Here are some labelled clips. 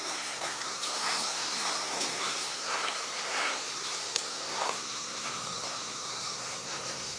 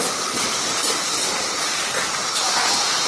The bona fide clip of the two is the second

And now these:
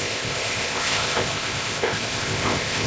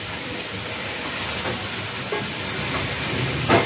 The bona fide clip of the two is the second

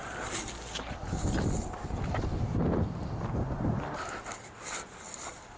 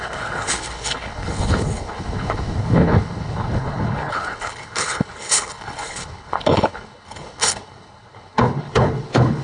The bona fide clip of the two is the first